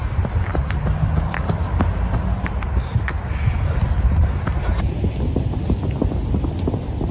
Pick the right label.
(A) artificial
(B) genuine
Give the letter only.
B